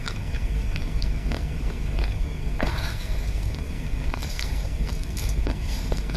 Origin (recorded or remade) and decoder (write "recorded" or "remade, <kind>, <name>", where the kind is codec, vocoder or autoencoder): remade, codec, SNAC